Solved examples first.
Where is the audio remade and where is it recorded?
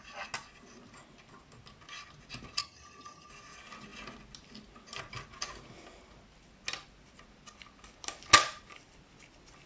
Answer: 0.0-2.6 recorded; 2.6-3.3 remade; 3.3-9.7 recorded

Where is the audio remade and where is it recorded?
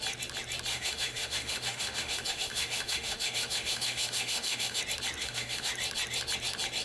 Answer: 0.0-0.7 recorded; 0.7-4.8 remade; 4.8-5.2 recorded; 5.2-5.7 remade; 5.7-6.8 recorded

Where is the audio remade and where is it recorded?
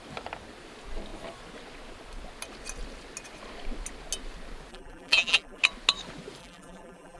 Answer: 0.0-4.7 recorded; 4.7-5.6 remade; 5.6-6.4 recorded; 6.4-7.2 remade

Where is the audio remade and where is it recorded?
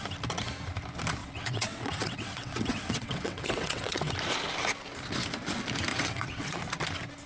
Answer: 0.0-1.2 recorded; 1.2-4.1 remade; 4.1-5.9 recorded; 5.9-6.6 remade; 6.6-7.3 recorded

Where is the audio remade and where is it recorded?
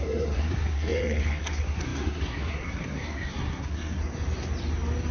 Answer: 0.0-4.0 remade; 4.0-5.1 recorded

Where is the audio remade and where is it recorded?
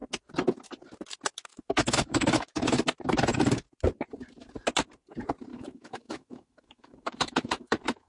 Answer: 0.0-1.5 recorded; 1.5-2.8 remade; 2.8-5.5 recorded; 5.5-8.1 remade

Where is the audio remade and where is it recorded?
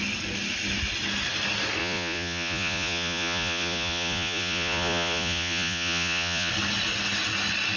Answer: 0.0-1.8 recorded; 1.8-6.5 remade; 6.5-7.8 recorded